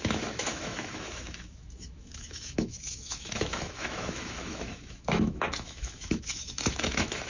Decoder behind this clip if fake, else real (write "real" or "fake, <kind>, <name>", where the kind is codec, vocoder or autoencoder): fake, autoencoder, DAC-VAE